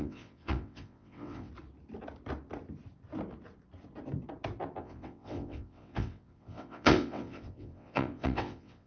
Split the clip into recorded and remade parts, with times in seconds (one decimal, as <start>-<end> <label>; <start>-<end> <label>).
0.0-1.5 remade; 1.5-4.8 recorded; 4.8-8.9 remade